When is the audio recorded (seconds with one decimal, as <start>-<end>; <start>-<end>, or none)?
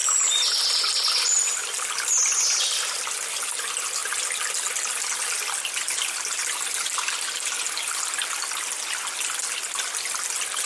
0.0-10.7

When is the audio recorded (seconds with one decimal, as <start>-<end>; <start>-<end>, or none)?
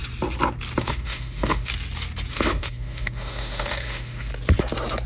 0.0-0.8; 1.7-2.3; 4.3-5.1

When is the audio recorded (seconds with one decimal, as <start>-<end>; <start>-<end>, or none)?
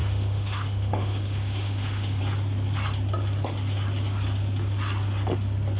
2.2-5.8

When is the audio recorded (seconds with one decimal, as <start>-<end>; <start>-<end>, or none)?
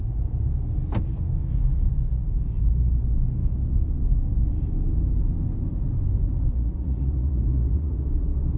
0.0-6.5; 8.0-8.6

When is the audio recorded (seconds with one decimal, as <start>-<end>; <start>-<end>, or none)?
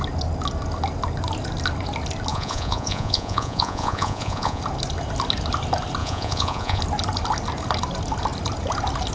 0.0-2.3; 4.6-6.0; 6.8-9.1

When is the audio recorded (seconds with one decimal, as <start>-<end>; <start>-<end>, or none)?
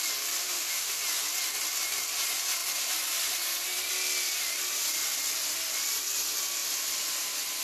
0.0-0.4; 1.0-7.6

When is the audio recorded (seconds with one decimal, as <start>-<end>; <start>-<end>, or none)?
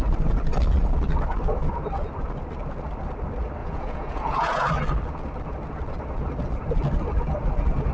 0.0-3.6; 4.7-7.9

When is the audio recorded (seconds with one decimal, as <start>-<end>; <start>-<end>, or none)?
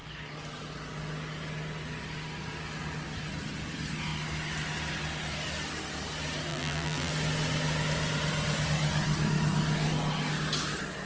0.0-6.5; 7.1-11.1